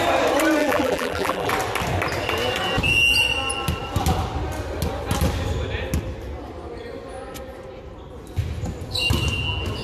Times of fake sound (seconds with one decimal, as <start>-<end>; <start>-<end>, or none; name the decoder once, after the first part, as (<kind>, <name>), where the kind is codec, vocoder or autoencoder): 0.6-1.5 (vocoder, BigVGAN v2)